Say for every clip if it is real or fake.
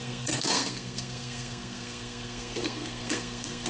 fake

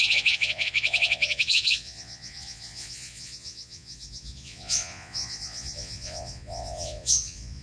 fake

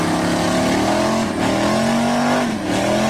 real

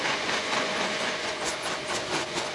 fake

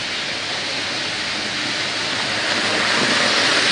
real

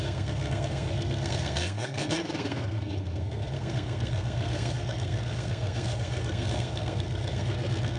fake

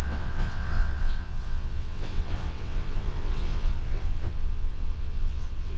fake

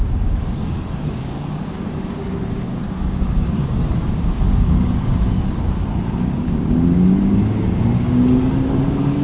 fake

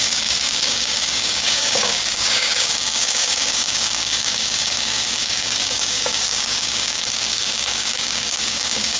fake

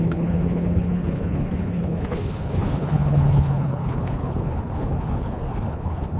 fake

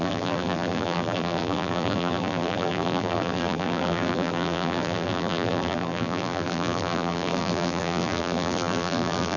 fake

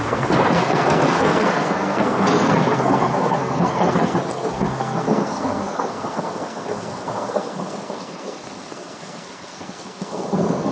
fake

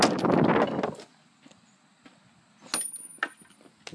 real